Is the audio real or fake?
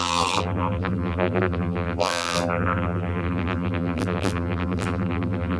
fake